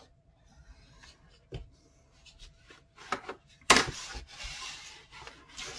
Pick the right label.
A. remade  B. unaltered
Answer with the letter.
A